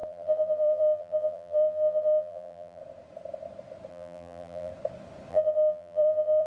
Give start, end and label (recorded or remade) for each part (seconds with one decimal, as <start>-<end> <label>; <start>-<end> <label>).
0.0-2.8 remade; 2.8-3.9 recorded; 3.9-4.7 remade; 4.7-5.3 recorded; 5.3-6.5 remade